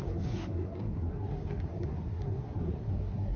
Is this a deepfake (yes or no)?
yes